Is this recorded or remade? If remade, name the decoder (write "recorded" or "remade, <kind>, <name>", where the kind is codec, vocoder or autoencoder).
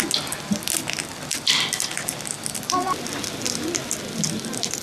recorded